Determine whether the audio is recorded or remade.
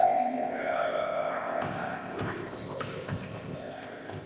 remade